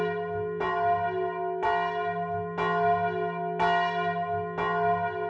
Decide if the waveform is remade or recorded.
recorded